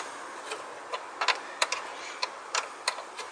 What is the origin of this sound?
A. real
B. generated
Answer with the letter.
A